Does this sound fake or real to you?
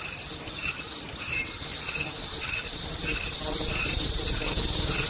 fake